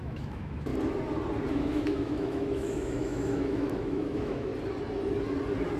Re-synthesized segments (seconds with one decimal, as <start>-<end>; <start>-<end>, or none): 0.0-0.7; 1.5-4.5